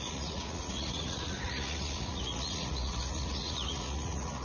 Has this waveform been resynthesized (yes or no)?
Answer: yes